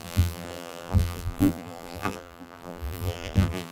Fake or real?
fake